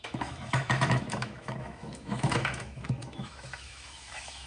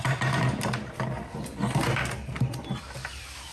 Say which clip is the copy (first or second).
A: first